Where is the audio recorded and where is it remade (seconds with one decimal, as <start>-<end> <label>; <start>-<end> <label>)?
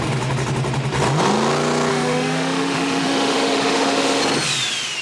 0.0-1.9 recorded; 1.9-4.2 remade; 4.2-5.0 recorded